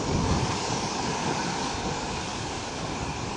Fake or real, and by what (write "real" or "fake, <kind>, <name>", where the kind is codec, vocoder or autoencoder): fake, codec, DAC